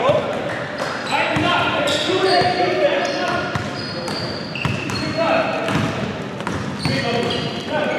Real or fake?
real